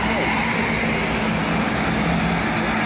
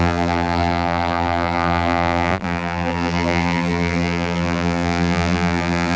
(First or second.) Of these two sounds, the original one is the first